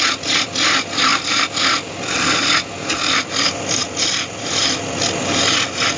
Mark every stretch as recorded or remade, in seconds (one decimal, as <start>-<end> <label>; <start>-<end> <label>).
0.0-6.0 recorded